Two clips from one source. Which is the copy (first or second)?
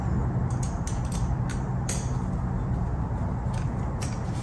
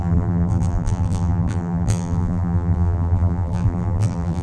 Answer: second